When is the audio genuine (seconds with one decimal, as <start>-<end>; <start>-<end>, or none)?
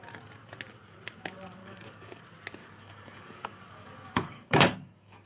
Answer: 0.0-1.6; 2.2-2.6